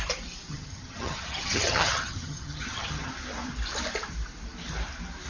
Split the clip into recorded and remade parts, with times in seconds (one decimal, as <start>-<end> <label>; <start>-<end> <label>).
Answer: 0.0-0.5 recorded; 0.5-3.1 remade; 3.1-5.3 recorded